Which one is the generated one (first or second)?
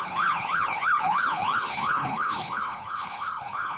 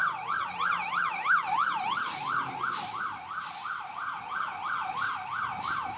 first